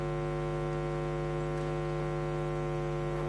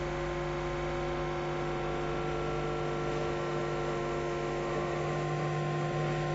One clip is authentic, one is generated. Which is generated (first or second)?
second